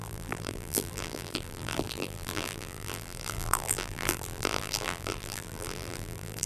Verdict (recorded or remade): remade